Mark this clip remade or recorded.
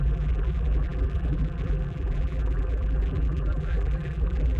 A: remade